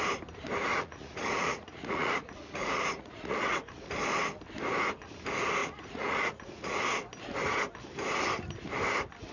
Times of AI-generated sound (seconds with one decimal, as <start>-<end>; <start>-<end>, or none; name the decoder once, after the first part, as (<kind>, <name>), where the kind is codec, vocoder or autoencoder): 0.7-3.9 (vocoder, Vocos); 5.6-6.8